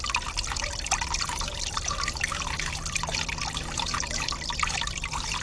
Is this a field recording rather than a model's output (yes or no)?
no